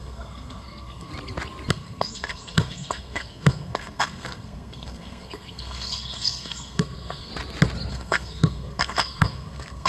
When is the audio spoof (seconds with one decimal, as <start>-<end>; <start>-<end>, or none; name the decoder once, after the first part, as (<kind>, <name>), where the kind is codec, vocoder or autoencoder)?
0.0-1.1 (codec, SNAC); 1.7-7.3; 7.9-9.9